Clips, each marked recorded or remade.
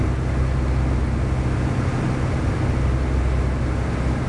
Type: recorded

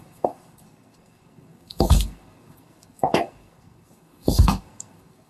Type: remade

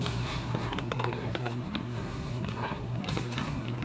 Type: remade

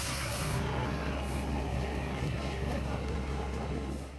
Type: remade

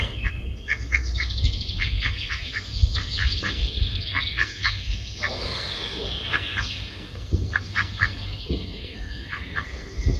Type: remade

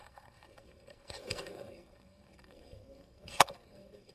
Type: remade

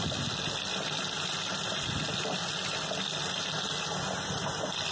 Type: recorded